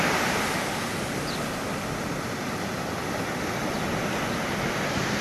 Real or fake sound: real